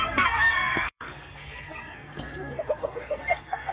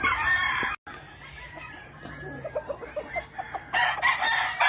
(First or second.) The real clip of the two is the second